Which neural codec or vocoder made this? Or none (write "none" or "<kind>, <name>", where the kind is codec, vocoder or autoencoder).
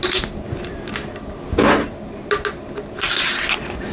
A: none